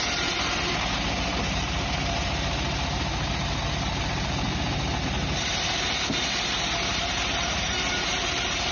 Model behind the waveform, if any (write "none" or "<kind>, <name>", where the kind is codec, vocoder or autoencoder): none